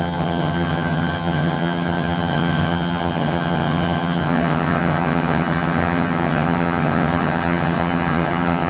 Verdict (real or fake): fake